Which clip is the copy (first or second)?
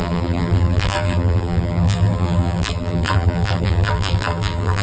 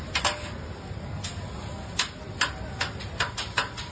first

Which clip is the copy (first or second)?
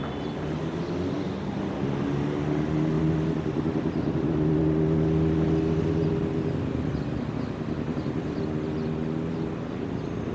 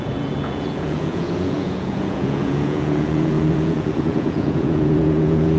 second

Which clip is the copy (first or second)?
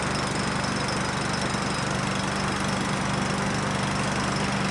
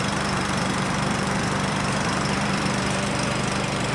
second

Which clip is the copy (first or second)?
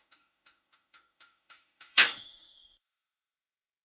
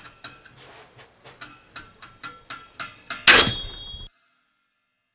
first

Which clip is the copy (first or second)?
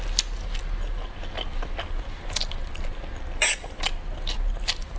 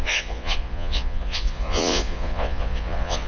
second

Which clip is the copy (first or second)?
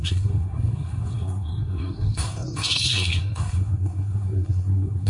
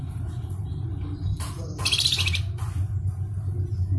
first